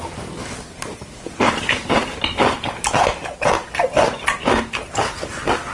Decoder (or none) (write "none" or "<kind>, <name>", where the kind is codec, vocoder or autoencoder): none